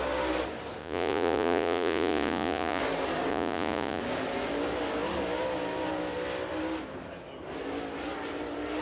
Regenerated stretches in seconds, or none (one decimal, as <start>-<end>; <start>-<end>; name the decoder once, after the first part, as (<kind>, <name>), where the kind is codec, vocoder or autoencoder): 0.8-2.8 (vocoder, Vocos); 3.3-4.0